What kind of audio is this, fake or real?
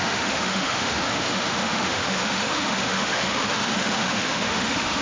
fake